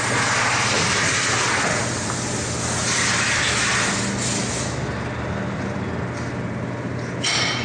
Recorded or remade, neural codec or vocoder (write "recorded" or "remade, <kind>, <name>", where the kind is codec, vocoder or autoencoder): recorded